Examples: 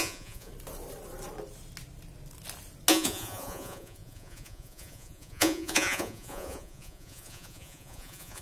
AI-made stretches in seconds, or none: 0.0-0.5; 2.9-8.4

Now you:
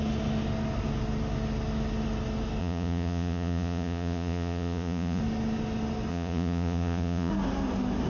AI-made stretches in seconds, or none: 2.6-5.2; 6.1-7.3

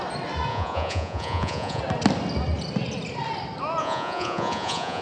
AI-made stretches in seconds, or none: 0.5-1.8; 3.8-5.0

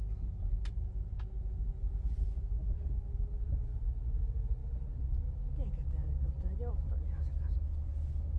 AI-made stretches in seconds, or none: none

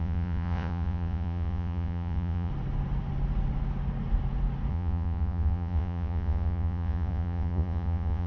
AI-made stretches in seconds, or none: 0.0-2.5; 4.7-8.3

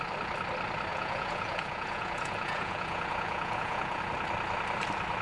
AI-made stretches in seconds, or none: 0.9-4.0

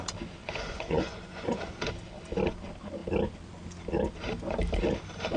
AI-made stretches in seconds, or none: 0.4-1.7